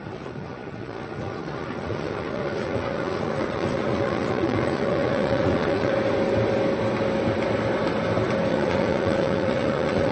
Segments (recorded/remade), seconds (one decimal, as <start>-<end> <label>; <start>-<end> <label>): 0.0-5.9 remade; 5.9-8.5 recorded; 8.5-10.1 remade